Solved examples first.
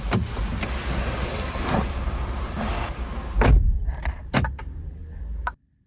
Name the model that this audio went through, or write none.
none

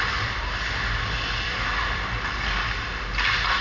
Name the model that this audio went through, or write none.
none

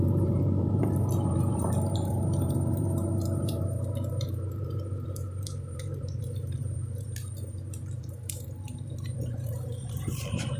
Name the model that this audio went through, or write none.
vocoder, BigVGAN v2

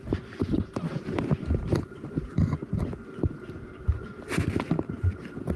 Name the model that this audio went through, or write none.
none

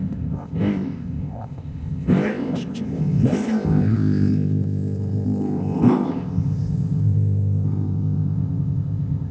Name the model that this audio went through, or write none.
codec, ZipCodec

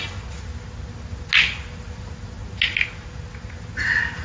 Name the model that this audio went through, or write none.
none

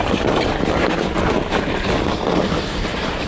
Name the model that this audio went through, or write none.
vocoder, BigVGAN v2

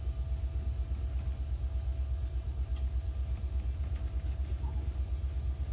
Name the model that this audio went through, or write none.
none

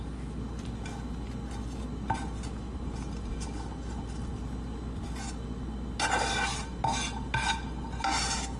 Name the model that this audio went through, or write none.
none